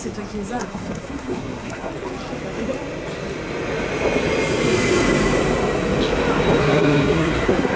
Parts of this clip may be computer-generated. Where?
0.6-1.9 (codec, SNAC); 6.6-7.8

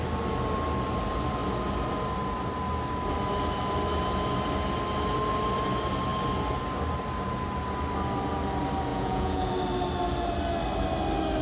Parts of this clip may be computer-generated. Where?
8.9-9.5 (vocoder, Vocos)

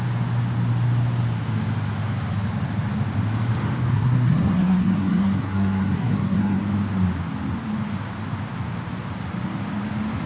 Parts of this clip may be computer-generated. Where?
3.9-6.6 (codec, SNAC)

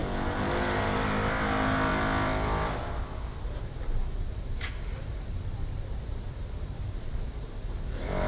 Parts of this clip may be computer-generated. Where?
none

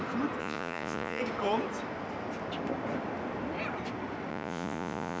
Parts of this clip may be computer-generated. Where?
0.4-1.2 (vocoder, Vocos); 4.3-5.2